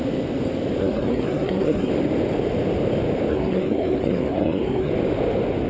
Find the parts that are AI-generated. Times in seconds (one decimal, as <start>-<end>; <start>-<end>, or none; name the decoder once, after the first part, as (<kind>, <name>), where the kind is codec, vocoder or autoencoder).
0.8-1.9 (codec, SNAC); 3.3-4.9